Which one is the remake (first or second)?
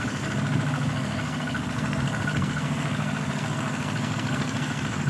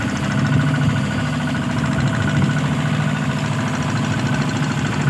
first